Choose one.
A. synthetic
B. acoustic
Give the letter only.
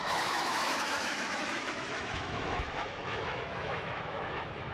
A